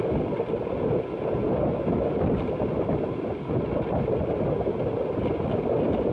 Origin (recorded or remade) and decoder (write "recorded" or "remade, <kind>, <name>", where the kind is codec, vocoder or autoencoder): recorded